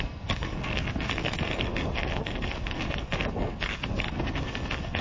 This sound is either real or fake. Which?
fake